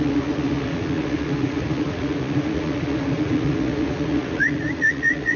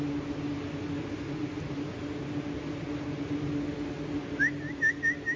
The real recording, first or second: second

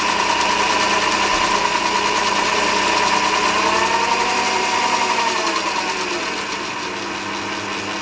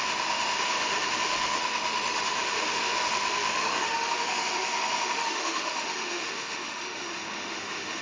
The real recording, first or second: first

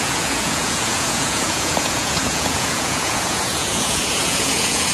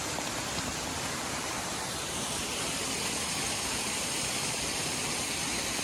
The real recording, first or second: second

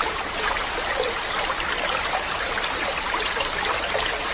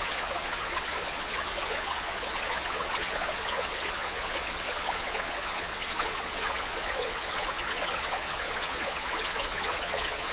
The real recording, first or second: first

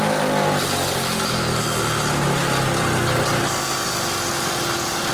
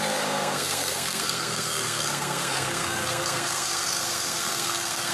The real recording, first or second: first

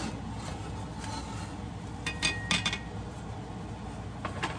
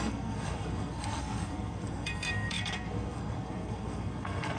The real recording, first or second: first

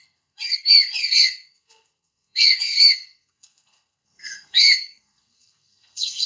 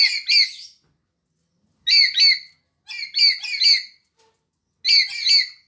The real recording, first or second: second